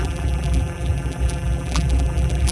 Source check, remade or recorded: remade